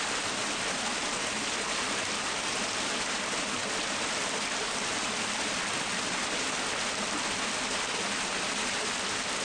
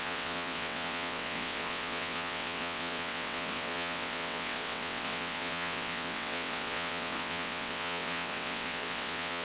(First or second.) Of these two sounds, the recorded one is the first